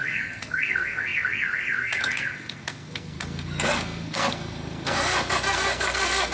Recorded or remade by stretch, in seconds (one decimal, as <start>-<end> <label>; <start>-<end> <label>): 0.0-6.3 remade